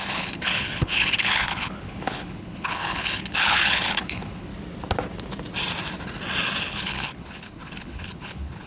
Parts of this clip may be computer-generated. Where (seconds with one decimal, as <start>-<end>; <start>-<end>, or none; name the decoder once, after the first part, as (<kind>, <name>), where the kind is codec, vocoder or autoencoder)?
0.0-4.5 (codec, HILCodec); 6.6-8.7